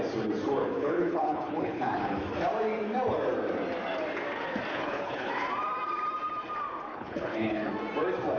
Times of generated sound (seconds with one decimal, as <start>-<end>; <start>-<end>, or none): 0.6-2.2; 4.7-5.3; 6.9-7.7